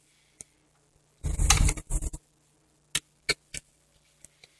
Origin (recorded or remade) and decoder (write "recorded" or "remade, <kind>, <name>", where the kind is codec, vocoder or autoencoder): recorded